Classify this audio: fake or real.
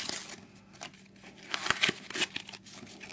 real